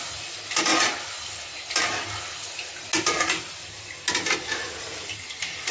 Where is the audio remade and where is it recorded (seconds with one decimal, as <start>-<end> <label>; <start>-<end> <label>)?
0.0-5.7 recorded